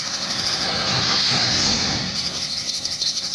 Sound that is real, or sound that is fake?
fake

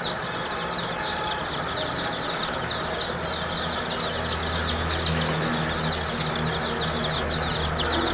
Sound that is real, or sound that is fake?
real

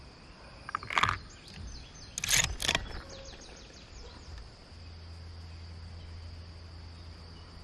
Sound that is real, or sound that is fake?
real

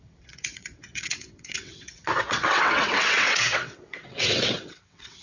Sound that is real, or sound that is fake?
fake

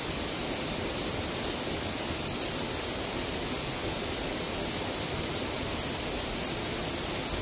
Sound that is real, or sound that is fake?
real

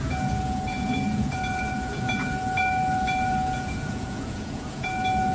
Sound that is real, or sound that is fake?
fake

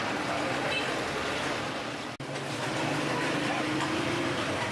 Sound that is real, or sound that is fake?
real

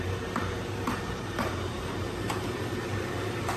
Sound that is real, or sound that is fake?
fake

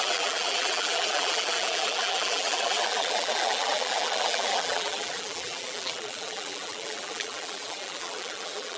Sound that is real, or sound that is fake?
fake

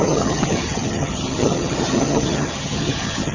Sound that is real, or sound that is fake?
fake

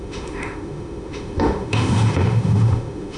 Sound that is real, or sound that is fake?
fake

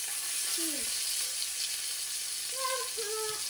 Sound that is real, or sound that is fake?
real